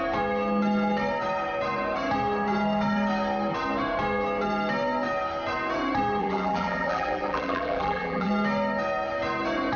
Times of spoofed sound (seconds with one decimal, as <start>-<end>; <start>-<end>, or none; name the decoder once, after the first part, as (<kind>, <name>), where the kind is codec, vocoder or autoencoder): 6.2-8.3 (vocoder, BigVGAN v2)